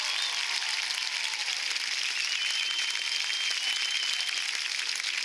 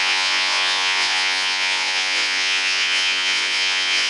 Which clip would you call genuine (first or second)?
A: first